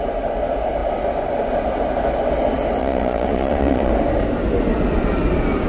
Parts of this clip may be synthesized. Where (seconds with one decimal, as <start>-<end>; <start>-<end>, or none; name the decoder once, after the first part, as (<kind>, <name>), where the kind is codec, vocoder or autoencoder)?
2.8-3.9 (vocoder, Vocos)